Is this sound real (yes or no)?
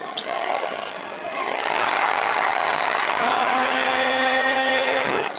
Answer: no